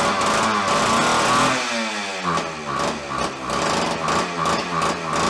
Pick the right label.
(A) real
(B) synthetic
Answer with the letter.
A